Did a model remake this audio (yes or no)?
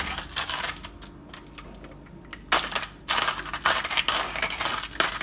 no